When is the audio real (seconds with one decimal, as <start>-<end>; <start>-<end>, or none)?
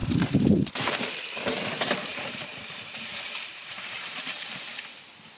0.7-2.1; 4.7-5.4